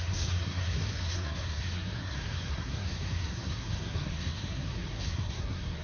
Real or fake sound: fake